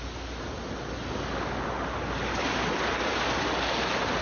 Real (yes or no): yes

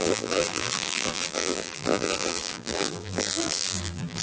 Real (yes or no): no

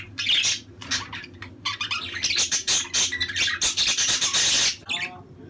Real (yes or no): yes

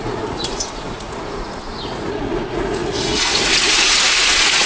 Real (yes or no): no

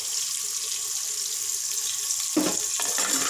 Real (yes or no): yes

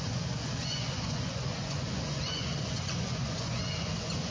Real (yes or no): no